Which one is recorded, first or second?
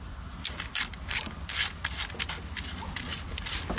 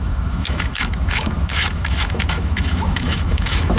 first